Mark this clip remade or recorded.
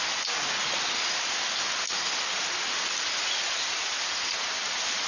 recorded